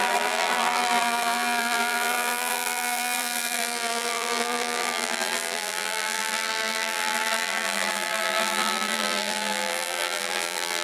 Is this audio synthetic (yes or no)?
yes